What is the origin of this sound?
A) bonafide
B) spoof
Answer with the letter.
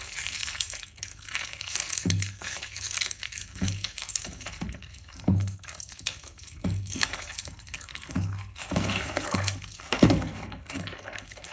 B